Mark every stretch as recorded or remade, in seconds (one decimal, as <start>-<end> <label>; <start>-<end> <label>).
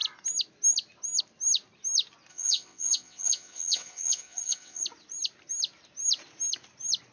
0.0-2.3 recorded; 2.3-4.8 remade; 4.8-7.1 recorded